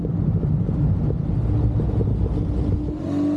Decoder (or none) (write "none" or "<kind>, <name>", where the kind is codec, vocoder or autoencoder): none